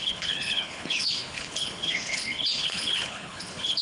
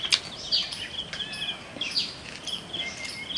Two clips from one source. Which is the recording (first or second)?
second